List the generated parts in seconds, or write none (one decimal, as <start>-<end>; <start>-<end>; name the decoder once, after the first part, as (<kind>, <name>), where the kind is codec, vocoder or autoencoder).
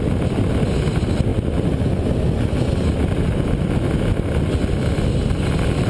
none